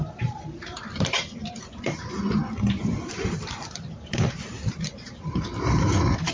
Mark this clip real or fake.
fake